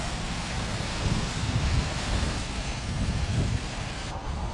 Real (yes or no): no